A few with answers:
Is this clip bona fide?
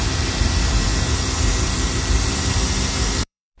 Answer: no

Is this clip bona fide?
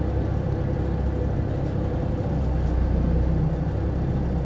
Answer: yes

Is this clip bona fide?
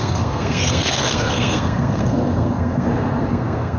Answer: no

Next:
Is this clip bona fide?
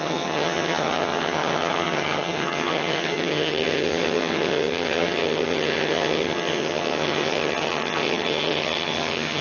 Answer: no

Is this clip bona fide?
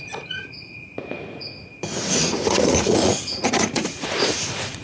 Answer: no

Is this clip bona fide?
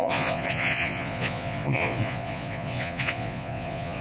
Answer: no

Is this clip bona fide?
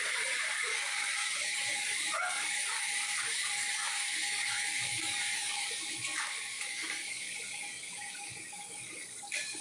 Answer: no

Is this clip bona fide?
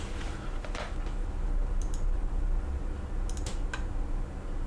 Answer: yes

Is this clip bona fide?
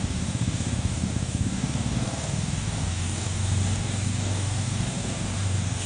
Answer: no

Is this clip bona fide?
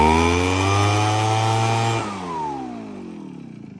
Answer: yes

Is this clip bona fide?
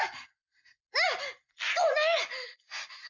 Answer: yes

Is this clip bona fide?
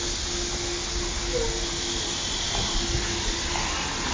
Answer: yes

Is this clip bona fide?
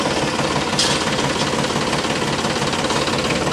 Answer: no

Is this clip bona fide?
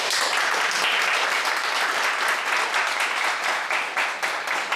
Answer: yes